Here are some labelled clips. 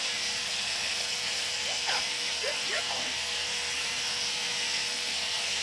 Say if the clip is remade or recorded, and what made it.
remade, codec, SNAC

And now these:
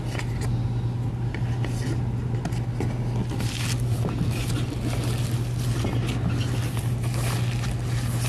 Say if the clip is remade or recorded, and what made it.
recorded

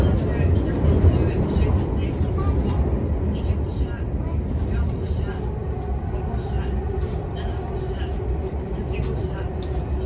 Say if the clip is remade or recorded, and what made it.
recorded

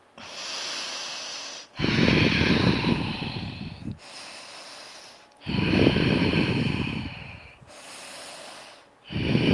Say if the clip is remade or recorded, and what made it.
recorded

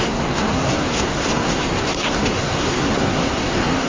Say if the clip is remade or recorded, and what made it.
remade, codec, SNAC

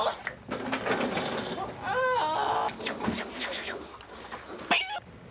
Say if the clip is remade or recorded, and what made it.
recorded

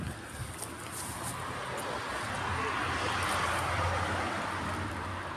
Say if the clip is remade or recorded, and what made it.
recorded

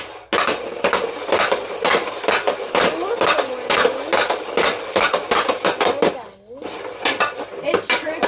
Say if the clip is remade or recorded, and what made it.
recorded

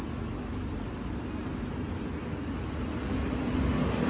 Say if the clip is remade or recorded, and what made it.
recorded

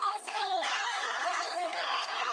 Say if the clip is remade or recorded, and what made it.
remade, codec, SNAC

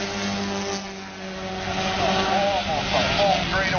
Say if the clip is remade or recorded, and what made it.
recorded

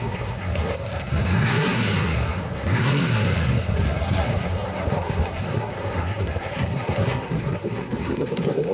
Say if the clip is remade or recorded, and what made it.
remade, codec, SNAC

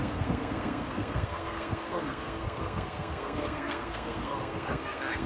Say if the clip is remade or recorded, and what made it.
remade, codec, SNAC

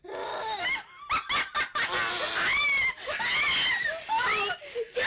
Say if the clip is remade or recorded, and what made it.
recorded